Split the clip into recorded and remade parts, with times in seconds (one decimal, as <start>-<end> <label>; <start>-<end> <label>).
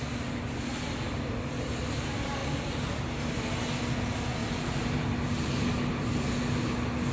0.0-7.1 recorded